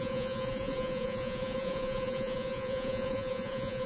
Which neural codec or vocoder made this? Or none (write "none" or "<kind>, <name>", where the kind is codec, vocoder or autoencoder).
vocoder, Vocos